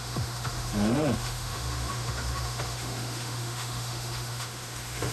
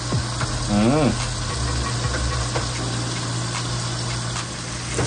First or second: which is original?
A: second